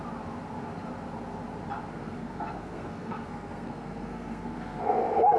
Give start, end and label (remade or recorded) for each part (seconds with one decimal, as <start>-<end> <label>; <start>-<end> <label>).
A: 0.0-1.9 recorded; 1.9-5.4 remade